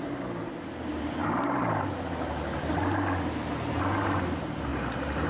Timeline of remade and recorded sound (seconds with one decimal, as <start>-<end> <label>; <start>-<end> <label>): 0.0-1.2 recorded; 1.2-1.7 remade; 1.7-4.7 recorded; 4.7-5.3 remade